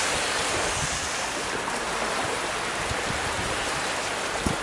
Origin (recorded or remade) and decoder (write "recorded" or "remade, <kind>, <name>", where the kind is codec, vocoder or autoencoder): recorded